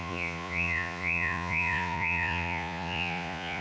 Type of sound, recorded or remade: remade